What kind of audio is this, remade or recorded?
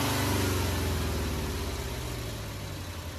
recorded